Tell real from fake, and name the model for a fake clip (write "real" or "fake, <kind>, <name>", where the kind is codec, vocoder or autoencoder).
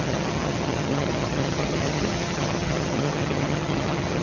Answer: fake, vocoder, HiFi-GAN